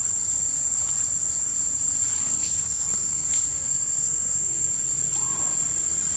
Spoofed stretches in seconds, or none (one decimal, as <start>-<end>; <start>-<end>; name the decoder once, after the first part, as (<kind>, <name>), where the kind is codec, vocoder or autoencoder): 2.2-4.7 (codec, SNAC)